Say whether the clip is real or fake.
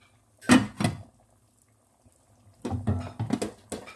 real